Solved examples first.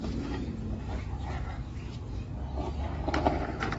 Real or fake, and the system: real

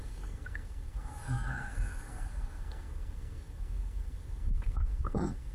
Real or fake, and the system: fake, codec, SNAC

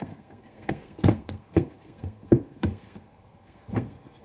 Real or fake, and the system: fake, codec, SNAC